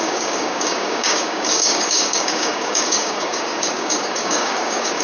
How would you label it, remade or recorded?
remade